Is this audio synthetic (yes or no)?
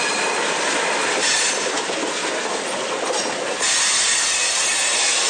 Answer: no